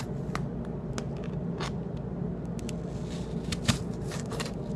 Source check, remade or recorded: recorded